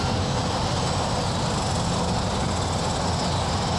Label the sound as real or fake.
real